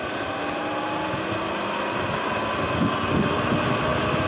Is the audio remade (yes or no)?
no